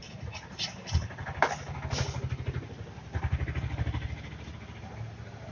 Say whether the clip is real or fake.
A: real